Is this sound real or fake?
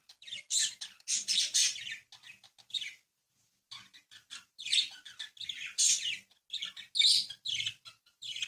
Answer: real